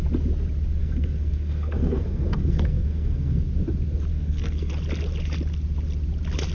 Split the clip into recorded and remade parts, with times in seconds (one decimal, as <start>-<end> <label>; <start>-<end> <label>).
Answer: 0.0-0.8 recorded; 0.8-3.4 remade; 3.4-4.1 recorded; 4.1-4.7 remade; 4.7-6.5 recorded